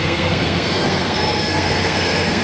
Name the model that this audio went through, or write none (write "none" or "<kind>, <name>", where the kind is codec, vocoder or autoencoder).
codec, SNAC